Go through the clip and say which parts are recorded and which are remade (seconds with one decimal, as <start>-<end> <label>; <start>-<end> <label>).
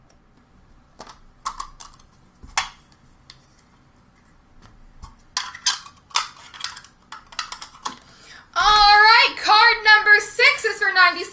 0.0-11.3 recorded